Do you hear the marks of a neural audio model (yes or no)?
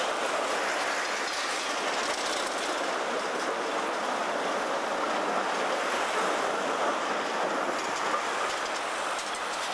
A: no